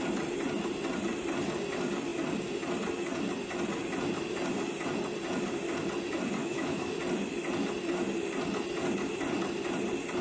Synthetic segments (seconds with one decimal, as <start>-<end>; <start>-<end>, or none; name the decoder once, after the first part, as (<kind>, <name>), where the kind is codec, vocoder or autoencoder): 6.4-7.0 (autoencoder, DAC-VAE)